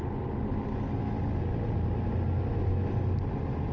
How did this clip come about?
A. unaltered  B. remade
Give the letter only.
A